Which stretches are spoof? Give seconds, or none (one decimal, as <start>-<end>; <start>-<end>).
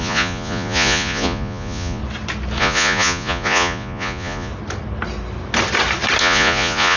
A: 0.0-2.0; 2.6-4.5; 6.2-7.0